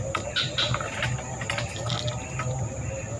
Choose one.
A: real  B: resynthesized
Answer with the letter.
A